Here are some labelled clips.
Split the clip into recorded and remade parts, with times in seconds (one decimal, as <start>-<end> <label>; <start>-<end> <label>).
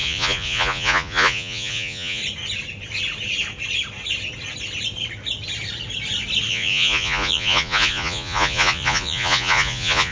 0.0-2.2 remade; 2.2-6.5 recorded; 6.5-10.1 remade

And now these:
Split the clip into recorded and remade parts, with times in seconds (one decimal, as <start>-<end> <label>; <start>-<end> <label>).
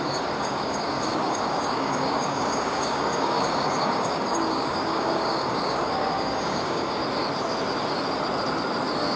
0.0-7.0 remade; 7.0-9.2 recorded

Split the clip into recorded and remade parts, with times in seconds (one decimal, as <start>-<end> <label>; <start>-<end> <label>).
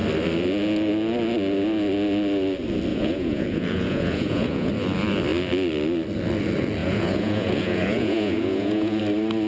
0.0-2.9 recorded; 2.9-4.7 remade; 4.7-6.8 recorded; 6.8-9.0 remade; 9.0-9.5 recorded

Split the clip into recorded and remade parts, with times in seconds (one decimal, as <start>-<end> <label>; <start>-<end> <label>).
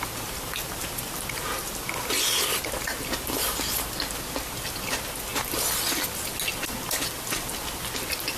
0.0-8.4 recorded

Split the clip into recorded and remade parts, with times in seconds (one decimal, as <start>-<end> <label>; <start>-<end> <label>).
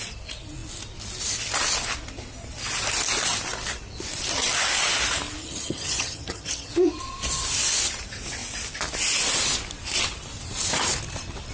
0.0-5.4 recorded; 5.4-6.7 remade; 6.7-11.5 recorded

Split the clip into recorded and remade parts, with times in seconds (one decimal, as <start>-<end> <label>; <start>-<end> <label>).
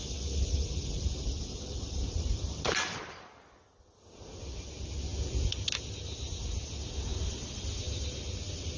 0.0-8.8 recorded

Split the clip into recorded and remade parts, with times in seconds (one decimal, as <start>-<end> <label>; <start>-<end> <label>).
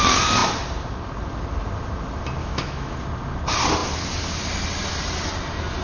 0.0-2.4 recorded; 2.4-3.0 remade; 3.0-5.8 recorded